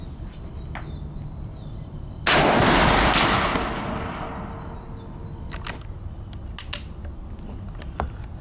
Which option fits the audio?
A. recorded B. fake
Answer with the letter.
A